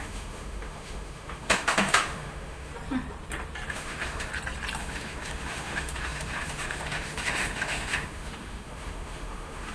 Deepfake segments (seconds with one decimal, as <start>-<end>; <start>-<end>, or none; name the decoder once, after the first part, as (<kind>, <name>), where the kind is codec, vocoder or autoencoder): 0.0-2.7 (autoencoder, DAC-VAE); 3.7-4.3; 4.8-9.7